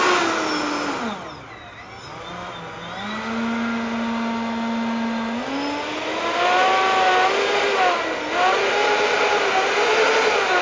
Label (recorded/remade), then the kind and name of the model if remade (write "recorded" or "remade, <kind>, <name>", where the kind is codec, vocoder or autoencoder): recorded